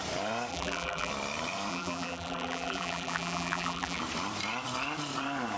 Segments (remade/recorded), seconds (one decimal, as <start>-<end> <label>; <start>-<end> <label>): 0.0-0.5 recorded; 0.5-1.1 remade; 1.1-1.7 recorded; 1.7-4.0 remade; 4.0-5.6 recorded